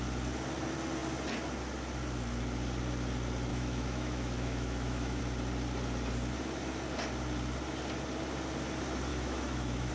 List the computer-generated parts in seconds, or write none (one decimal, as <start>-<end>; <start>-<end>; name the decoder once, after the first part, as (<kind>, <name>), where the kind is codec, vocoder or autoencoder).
3.5-5.2 (autoencoder, DAC-VAE); 9.1-9.9